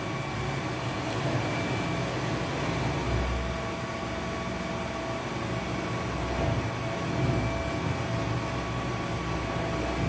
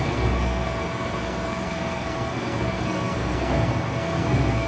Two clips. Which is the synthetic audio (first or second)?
second